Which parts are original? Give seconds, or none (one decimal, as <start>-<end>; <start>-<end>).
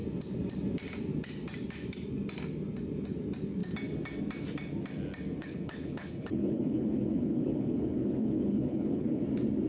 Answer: 0.0-5.4; 9.2-9.7